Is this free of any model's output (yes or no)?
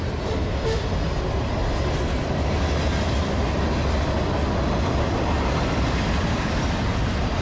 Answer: yes